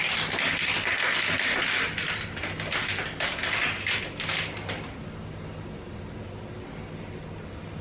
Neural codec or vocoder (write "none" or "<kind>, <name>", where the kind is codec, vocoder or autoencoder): none